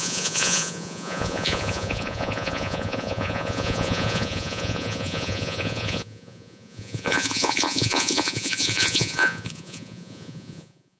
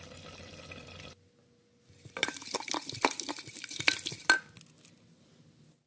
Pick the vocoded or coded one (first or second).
first